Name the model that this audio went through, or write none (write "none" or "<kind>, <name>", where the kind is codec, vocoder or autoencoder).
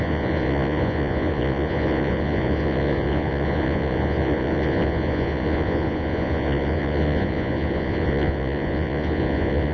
vocoder, Vocos